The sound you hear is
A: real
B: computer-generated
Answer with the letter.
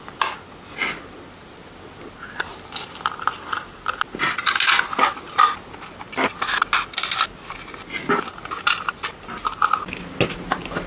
A